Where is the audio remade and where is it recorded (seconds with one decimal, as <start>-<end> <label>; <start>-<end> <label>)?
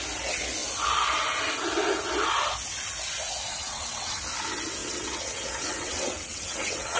0.0-3.5 recorded; 3.5-4.2 remade; 4.2-4.8 recorded; 4.8-7.0 remade